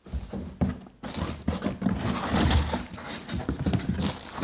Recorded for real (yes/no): yes